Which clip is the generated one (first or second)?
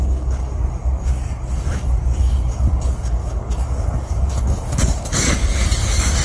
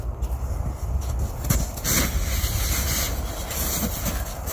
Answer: first